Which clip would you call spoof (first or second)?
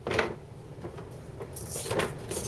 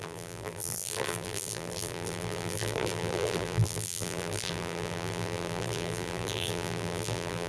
second